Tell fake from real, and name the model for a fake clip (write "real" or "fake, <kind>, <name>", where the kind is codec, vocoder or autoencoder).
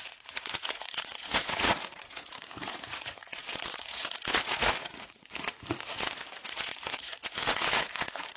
fake, vocoder, Vocos